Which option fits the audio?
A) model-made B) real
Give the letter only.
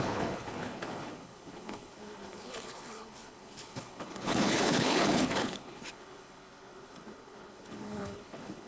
A